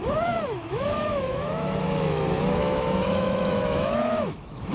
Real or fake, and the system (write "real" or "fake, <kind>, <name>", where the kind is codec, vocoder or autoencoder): fake, autoencoder, DAC-VAE